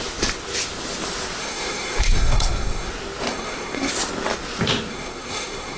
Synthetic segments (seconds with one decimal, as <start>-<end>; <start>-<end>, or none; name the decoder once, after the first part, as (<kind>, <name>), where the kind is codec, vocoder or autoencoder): 1.4-2.9 (codec, SNAC); 3.3-3.9; 4.9-5.8